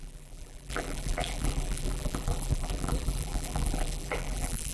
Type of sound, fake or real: fake